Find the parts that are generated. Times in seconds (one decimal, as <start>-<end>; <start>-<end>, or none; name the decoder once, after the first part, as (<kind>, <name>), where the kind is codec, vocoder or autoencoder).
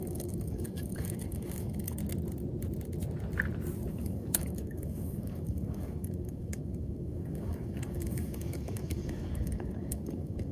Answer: 0.0-2.0 (codec, DAC); 3.9-10.5